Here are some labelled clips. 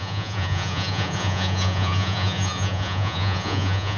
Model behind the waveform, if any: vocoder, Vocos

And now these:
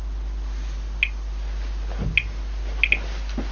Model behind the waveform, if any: none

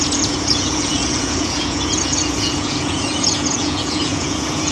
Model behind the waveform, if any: vocoder, Vocos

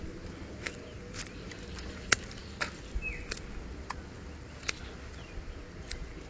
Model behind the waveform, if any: none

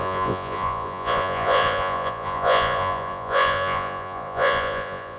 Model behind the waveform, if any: vocoder, Vocos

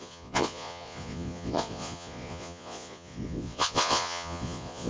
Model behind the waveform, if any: vocoder, Vocos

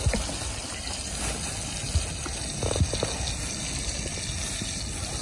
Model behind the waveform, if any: none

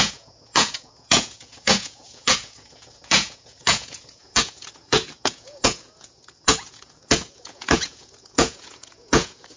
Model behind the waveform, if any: vocoder, Vocos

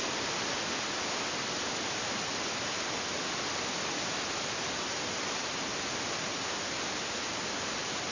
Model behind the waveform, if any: none